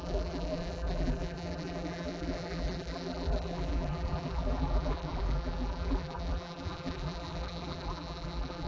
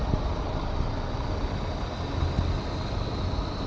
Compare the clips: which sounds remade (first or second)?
first